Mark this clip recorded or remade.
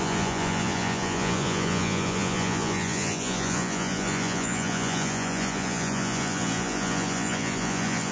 remade